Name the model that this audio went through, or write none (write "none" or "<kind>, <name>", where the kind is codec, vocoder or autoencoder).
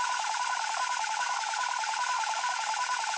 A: vocoder, BigVGAN v2